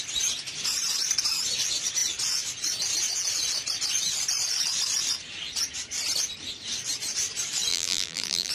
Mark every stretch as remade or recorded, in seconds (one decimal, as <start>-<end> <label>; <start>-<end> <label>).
0.0-7.7 recorded; 7.7-8.5 remade